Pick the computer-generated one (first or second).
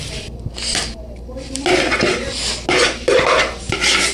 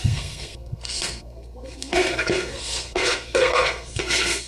second